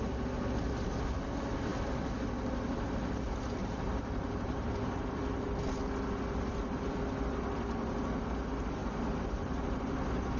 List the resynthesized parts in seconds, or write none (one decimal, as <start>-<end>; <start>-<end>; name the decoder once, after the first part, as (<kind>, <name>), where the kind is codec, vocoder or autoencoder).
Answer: 3.6-5.2 (vocoder, BigVGAN v2); 8.8-9.8